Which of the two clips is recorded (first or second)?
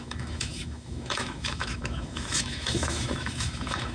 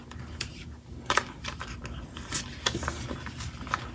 second